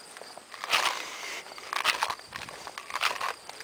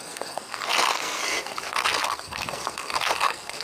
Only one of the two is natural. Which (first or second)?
first